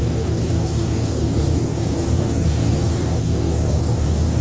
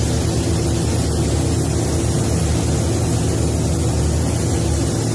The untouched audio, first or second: second